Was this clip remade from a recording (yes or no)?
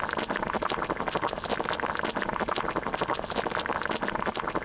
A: no